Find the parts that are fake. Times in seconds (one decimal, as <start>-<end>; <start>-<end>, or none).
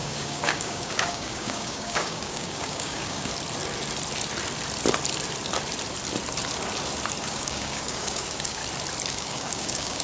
0.0-3.3; 7.2-8.6; 9.1-10.0